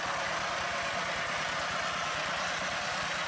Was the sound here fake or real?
real